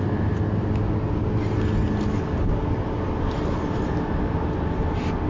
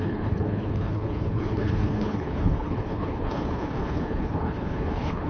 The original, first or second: first